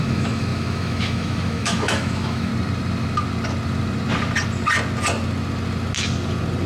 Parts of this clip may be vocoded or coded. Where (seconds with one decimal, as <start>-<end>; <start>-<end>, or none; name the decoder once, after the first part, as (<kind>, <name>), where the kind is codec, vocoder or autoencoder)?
0.0-2.5 (autoencoder, DAC-VAE)